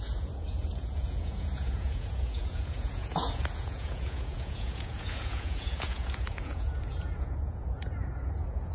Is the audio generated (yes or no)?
yes